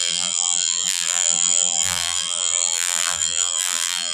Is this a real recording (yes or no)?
no